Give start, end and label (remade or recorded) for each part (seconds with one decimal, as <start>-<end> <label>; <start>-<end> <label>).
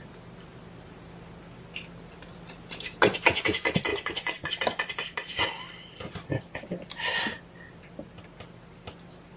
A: 0.0-3.9 recorded; 3.9-4.5 remade; 4.5-9.4 recorded